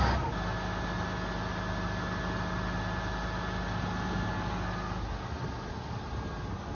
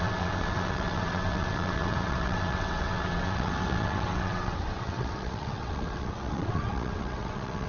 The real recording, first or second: first